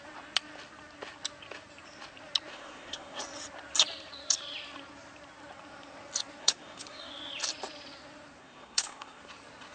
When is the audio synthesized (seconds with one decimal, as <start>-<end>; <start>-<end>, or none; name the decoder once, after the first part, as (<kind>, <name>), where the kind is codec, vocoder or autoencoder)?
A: 2.5-3.2 (codec, SNAC); 6.4-7.1; 8.4-9.2